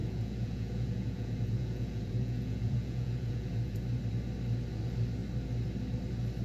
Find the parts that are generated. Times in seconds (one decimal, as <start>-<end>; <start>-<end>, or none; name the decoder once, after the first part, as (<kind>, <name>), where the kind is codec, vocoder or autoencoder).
0.0-3.8 (vocoder, Vocos)